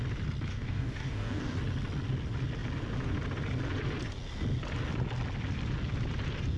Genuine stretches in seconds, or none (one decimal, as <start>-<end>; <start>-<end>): 0.0-0.5; 1.4-6.6